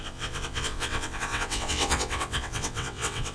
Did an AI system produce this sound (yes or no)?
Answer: yes